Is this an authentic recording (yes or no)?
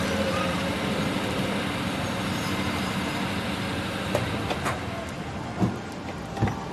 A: yes